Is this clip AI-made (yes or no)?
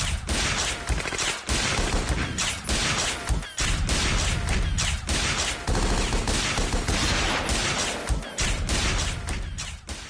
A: no